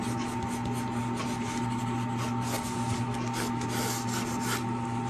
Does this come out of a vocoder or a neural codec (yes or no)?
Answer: no